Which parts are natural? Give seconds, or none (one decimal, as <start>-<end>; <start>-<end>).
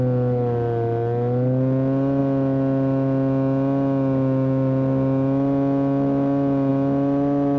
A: 0.0-7.6